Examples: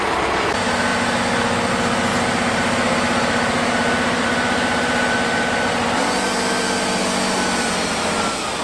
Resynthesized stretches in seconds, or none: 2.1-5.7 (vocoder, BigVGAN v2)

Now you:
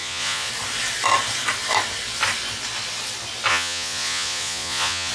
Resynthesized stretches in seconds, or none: 0.0-0.5 (vocoder, Vocos); 3.5-5.1